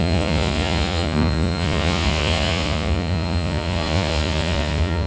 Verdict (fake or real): fake